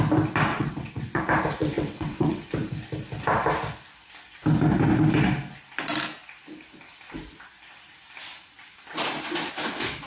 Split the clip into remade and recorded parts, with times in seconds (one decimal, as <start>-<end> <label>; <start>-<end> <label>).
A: 0.0-0.5 recorded; 0.5-1.2 remade; 1.2-1.6 recorded; 1.6-2.4 remade; 2.4-10.1 recorded

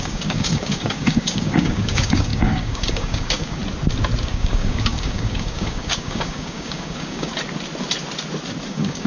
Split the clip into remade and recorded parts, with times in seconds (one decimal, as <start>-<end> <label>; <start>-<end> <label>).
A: 0.0-3.6 remade; 3.6-4.2 recorded; 4.2-7.3 remade; 7.3-8.7 recorded; 8.7-9.1 remade

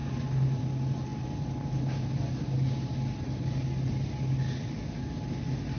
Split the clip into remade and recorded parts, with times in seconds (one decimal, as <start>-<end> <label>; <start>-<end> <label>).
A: 0.0-5.8 recorded

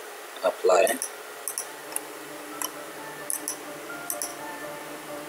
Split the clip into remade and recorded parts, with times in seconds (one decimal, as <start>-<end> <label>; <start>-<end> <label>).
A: 0.0-1.8 recorded; 1.8-2.8 remade; 2.8-4.3 recorded; 4.3-5.3 remade

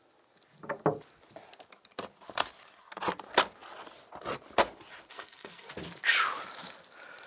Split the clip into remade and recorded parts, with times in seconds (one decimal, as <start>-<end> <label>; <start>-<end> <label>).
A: 0.0-5.1 recorded; 5.1-5.7 remade; 5.7-7.3 recorded